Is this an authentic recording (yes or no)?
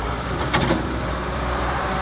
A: no